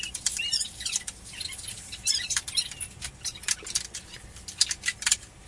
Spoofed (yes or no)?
no